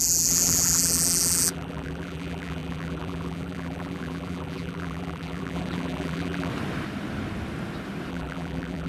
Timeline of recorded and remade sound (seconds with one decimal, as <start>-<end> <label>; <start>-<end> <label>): 0.0-6.5 remade; 6.5-8.1 recorded; 8.1-8.9 remade